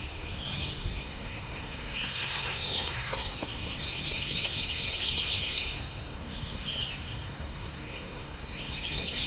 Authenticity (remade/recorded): remade